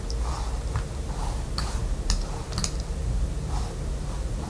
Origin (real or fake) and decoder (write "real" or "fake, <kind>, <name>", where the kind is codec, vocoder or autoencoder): real